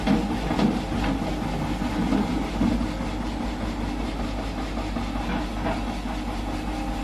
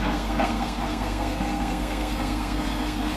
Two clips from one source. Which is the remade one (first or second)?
second